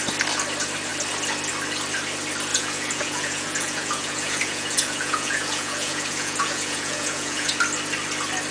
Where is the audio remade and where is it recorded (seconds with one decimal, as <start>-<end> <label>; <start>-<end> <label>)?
0.0-2.5 recorded; 2.5-7.6 remade; 7.6-8.5 recorded